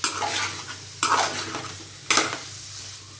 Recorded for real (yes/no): yes